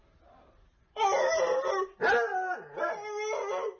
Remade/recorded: recorded